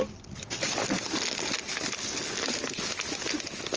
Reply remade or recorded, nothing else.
recorded